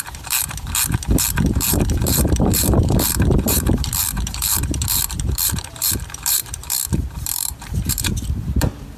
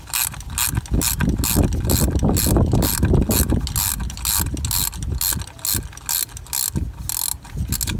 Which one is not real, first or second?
first